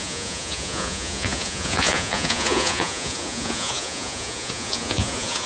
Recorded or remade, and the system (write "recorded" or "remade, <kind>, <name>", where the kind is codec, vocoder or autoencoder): remade, vocoder, Vocos